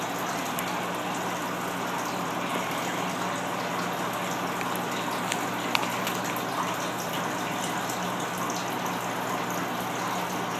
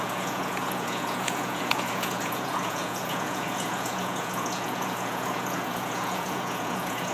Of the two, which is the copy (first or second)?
second